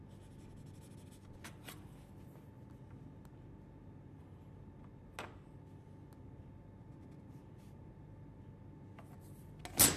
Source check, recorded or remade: recorded